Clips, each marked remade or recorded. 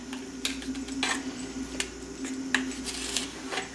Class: recorded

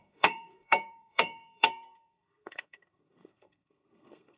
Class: remade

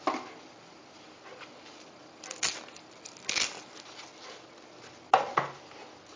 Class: recorded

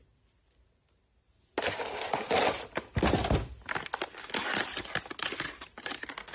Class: recorded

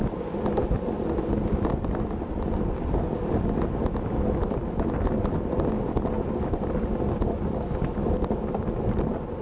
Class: recorded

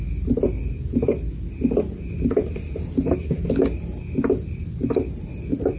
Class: recorded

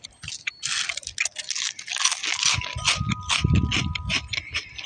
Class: recorded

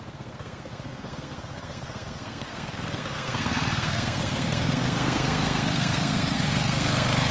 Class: remade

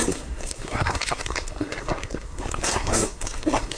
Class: remade